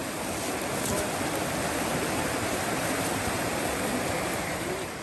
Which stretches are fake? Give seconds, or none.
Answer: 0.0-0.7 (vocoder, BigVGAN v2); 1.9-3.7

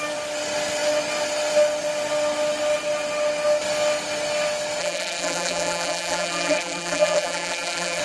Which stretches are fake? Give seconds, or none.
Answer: 4.8-8.0 (vocoder, BigVGAN v2)

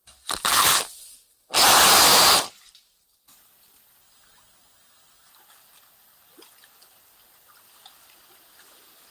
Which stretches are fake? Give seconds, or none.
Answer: 2.1-2.7 (vocoder, BigVGAN v2)

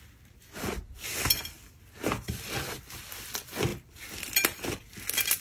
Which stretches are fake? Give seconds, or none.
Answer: none

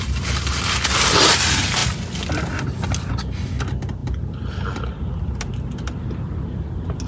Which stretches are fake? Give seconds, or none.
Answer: none

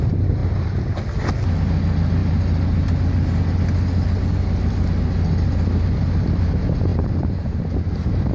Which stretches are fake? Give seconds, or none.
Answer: 2.2-3.3 (vocoder, BigVGAN v2); 6.9-7.7

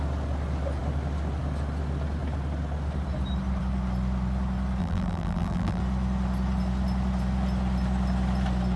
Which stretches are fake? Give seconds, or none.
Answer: 4.8-5.8 (vocoder, BigVGAN v2)

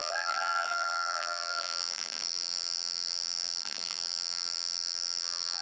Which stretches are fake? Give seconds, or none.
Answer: 0.0-5.6 (vocoder, BigVGAN v2)